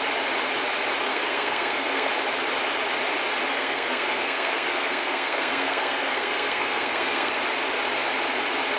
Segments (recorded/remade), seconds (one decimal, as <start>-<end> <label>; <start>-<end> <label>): 0.0-1.1 recorded; 1.1-2.1 remade; 2.1-3.5 recorded; 3.5-7.4 remade; 7.4-8.8 recorded